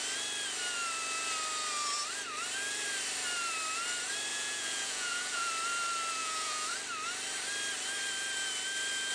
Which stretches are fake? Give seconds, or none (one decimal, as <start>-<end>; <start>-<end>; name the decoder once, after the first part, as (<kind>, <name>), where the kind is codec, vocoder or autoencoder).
4.3-5.5 (vocoder, Vocos); 6.2-6.7